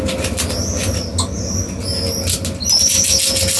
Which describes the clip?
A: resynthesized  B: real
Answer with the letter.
B